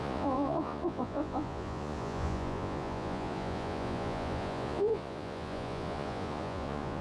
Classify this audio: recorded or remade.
remade